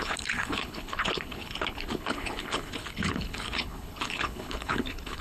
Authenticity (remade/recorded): remade